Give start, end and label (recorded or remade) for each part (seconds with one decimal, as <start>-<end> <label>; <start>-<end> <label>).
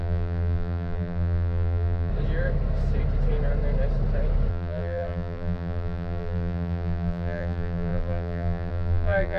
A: 0.0-2.1 remade; 2.1-4.5 recorded; 4.5-9.4 remade